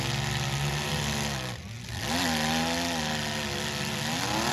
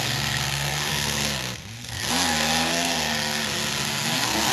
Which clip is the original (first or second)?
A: first